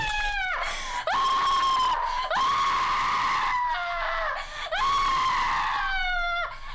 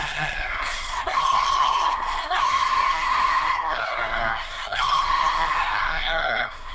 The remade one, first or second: second